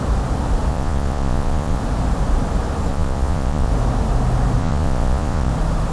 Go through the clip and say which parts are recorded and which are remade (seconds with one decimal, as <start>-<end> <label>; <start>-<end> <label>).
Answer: 0.0-0.7 recorded; 0.7-1.8 remade; 1.8-2.9 recorded; 2.9-3.7 remade; 3.7-4.6 recorded; 4.6-5.5 remade; 5.5-5.9 recorded